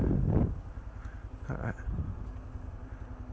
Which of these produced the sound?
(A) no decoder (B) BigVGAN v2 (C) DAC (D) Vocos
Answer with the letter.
A